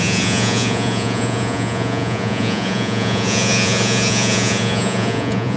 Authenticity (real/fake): fake